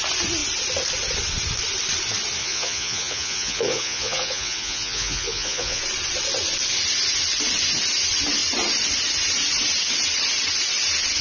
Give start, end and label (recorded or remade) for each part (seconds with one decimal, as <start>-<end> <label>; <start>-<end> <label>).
0.0-2.4 recorded; 2.4-5.8 remade; 5.8-11.2 recorded